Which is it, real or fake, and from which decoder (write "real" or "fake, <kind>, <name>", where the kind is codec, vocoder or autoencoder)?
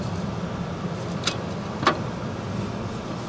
real